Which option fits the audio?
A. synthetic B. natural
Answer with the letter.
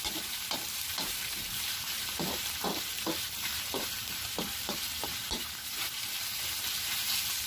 A